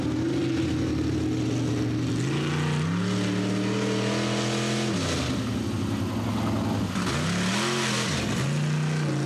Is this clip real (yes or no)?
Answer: yes